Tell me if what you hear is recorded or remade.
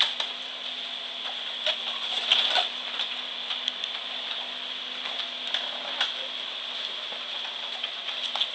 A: recorded